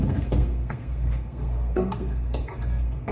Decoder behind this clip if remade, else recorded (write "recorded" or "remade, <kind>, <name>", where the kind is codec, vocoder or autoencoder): remade, codec, SNAC